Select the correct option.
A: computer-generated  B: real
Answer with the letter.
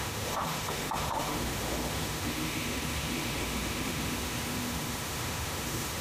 A